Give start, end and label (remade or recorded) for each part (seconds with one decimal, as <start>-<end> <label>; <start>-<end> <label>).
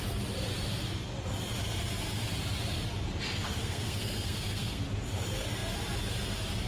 0.0-3.6 recorded; 3.6-4.8 remade; 4.8-6.7 recorded